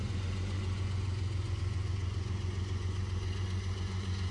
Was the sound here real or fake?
fake